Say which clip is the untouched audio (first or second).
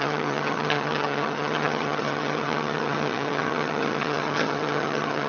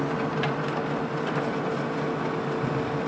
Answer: second